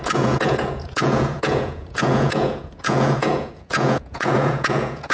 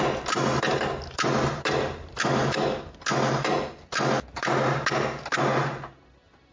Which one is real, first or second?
second